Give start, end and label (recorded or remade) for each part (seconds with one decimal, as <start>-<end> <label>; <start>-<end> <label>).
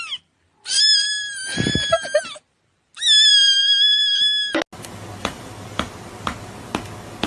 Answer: 0.0-0.7 recorded; 0.7-2.2 remade; 2.2-3.3 recorded; 3.3-4.1 remade; 4.1-5.2 recorded; 5.2-6.0 remade; 6.0-7.3 recorded